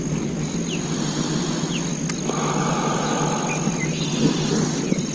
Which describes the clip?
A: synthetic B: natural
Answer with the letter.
B